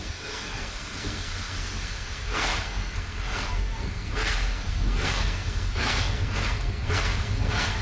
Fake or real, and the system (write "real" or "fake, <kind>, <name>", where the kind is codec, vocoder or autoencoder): fake, codec, SNAC